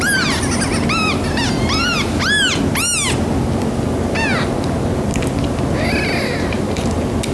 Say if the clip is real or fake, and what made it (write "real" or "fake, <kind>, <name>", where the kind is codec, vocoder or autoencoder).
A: real